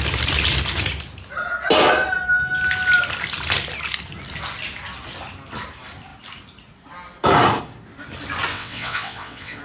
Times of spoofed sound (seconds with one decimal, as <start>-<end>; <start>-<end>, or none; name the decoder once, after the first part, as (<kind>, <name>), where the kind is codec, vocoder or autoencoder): 8.5-9.6 (vocoder, WaveNeXt)